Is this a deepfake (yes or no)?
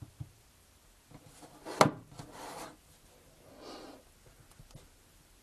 no